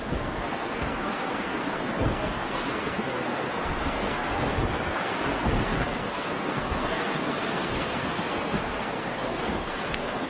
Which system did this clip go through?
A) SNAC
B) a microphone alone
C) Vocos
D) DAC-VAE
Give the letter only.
A